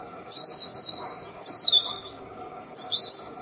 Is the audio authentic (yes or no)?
no